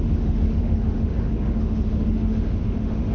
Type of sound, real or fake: fake